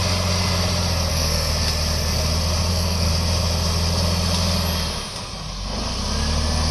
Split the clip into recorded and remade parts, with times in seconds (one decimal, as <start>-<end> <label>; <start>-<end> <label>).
0.0-1.1 recorded; 1.1-1.5 remade; 1.5-2.7 recorded; 2.7-3.1 remade; 3.1-6.7 recorded